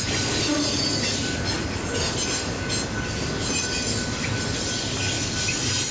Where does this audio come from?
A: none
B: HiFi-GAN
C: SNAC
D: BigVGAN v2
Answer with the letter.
A